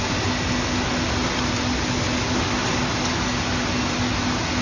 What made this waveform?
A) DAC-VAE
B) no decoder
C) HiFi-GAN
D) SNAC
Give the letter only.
B